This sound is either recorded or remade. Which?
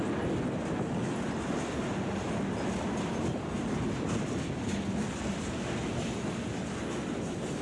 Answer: recorded